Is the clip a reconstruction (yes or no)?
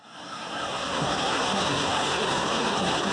yes